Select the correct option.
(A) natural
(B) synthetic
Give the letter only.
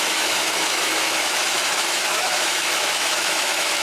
B